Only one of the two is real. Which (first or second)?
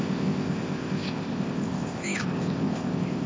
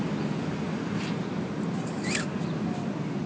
second